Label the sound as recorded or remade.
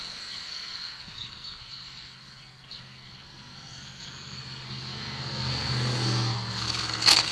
remade